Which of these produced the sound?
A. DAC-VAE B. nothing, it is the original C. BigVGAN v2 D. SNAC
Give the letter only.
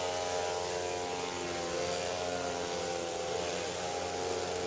B